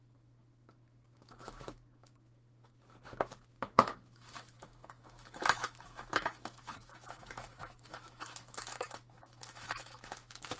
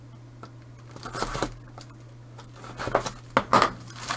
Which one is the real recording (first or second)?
second